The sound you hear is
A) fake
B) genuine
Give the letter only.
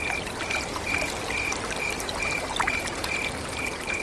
B